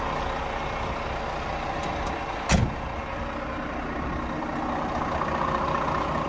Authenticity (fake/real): real